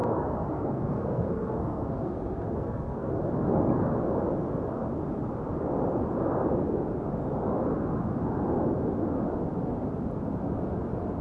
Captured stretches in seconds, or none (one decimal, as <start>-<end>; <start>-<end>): 3.1-11.2